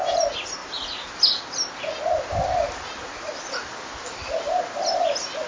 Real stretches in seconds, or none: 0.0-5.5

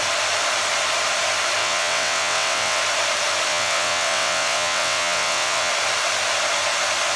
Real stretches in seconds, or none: 0.0-1.6; 2.8-3.5; 5.7-7.2

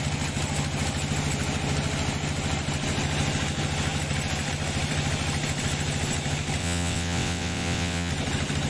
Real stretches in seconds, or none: 0.0-6.6; 8.1-8.7

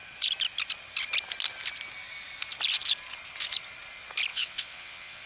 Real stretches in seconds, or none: 0.0-4.3

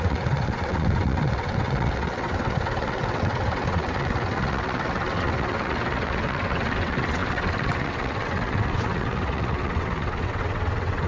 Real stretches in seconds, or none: none

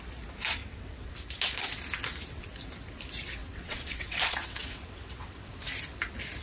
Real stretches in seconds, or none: 0.0-0.6; 1.1-3.4; 5.5-6.4